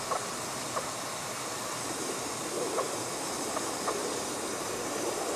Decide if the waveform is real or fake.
fake